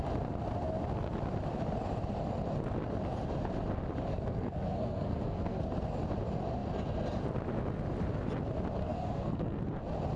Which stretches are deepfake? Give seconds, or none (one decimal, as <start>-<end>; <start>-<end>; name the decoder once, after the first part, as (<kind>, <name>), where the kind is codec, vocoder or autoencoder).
4.1-5.6 (codec, SNAC); 8.8-9.6